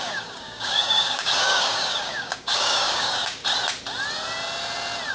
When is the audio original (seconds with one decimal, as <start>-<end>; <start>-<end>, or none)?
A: 3.4-5.1